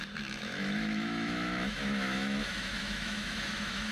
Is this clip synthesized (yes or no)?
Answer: yes